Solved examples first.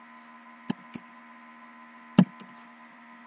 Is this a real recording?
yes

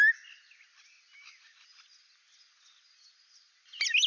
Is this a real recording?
yes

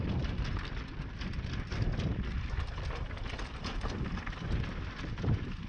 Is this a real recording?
no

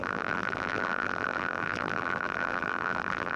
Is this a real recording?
no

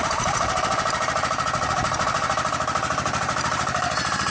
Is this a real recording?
no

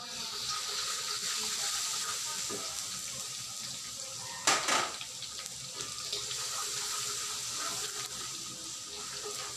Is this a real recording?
yes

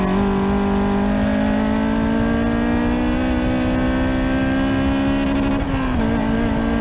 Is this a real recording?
yes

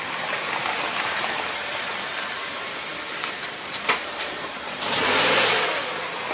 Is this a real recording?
no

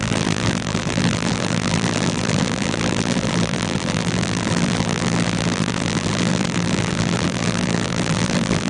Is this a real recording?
no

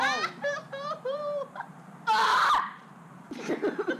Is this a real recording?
no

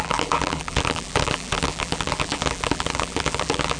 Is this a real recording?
no